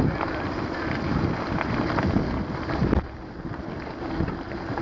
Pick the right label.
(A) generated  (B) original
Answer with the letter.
B